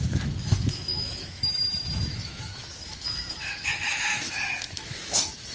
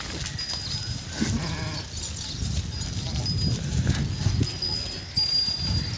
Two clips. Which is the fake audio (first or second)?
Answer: first